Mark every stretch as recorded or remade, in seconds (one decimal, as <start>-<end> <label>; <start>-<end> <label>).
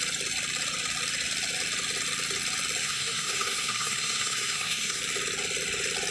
0.0-2.8 recorded; 2.8-5.0 remade; 5.0-6.1 recorded